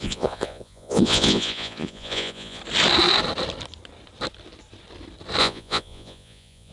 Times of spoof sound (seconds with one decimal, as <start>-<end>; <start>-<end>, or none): 0.0-2.6; 5.4-6.7

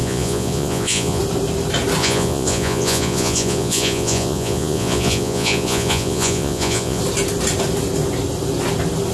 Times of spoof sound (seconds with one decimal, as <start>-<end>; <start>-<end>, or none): 0.0-1.2; 2.0-7.0

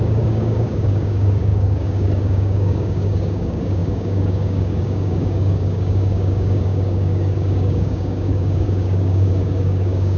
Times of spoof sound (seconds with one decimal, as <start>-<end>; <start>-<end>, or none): 0.0-10.2

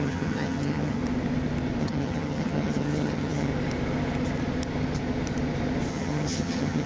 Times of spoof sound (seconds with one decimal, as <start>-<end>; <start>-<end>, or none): 0.0-1.0; 1.8-3.5; 5.9-6.9